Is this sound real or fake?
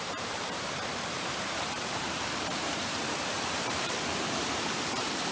fake